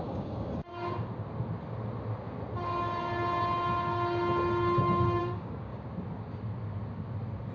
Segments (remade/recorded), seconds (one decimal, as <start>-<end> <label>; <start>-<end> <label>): 0.0-0.7 remade; 0.7-5.2 recorded; 5.2-5.7 remade; 5.7-7.5 recorded